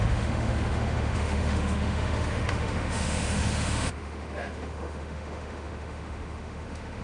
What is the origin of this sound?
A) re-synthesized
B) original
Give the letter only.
A